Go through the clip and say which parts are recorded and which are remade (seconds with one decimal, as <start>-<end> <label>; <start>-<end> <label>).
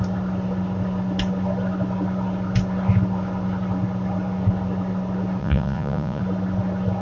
0.0-5.4 recorded; 5.4-6.2 remade; 6.2-7.0 recorded